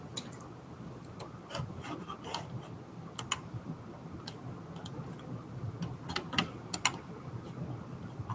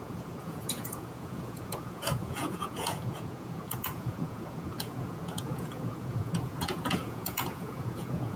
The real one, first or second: first